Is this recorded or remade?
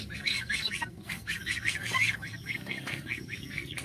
remade